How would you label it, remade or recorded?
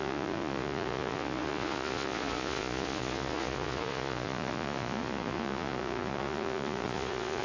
remade